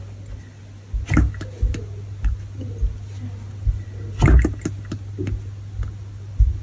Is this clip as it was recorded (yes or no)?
yes